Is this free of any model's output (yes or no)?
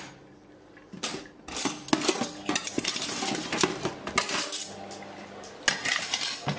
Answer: yes